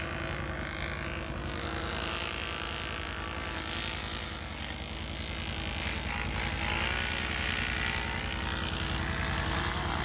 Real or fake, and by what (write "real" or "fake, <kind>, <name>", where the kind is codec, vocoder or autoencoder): real